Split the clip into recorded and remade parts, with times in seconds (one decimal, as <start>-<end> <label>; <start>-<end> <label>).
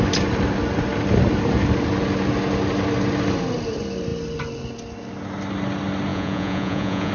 0.0-6.1 recorded; 6.1-7.1 remade